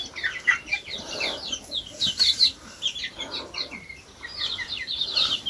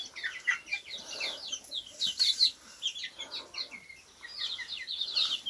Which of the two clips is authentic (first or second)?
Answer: second